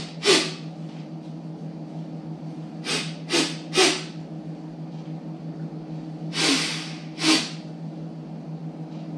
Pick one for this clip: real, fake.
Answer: real